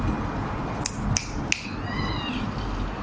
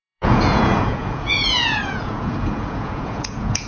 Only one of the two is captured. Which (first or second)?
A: first